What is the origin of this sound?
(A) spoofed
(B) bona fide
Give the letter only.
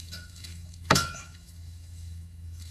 A